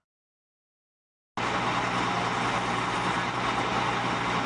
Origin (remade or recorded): recorded